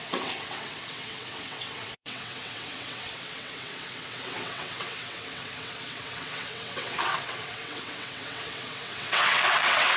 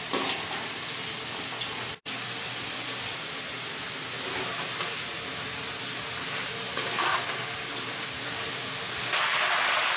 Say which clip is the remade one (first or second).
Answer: first